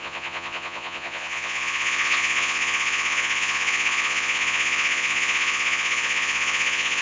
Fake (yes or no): yes